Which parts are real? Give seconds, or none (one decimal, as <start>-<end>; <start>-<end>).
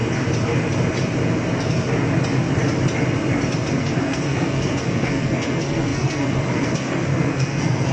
0.0-3.7